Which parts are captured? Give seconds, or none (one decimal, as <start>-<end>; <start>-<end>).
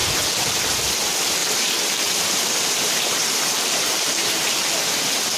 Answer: 0.0-1.4; 4.6-5.4